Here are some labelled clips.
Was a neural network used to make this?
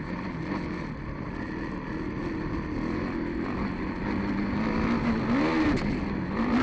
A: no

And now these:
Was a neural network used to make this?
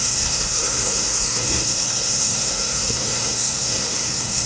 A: yes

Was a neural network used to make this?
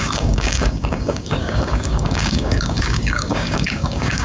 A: yes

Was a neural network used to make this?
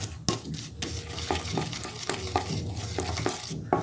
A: no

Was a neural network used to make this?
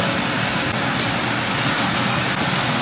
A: no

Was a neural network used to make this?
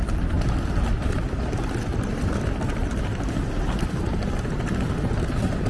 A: no